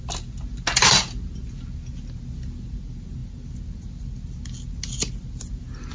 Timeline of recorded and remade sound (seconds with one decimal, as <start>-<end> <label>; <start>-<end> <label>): 0.0-5.9 recorded